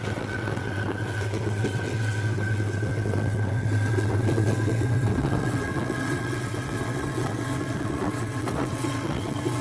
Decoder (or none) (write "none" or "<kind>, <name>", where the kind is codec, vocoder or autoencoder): vocoder, WaveNeXt